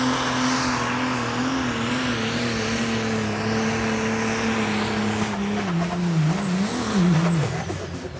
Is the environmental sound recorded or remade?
recorded